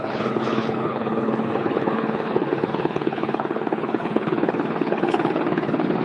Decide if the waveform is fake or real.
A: fake